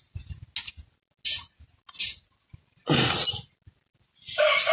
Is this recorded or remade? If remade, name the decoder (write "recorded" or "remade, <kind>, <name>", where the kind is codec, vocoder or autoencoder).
recorded